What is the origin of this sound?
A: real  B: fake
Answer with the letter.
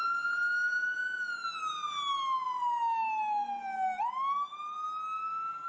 A